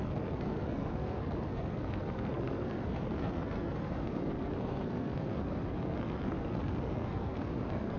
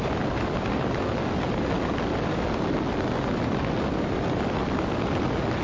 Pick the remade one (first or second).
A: first